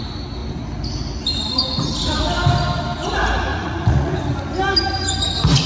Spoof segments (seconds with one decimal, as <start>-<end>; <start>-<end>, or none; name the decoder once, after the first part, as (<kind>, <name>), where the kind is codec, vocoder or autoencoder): 3.5-4.1 (vocoder, Vocos)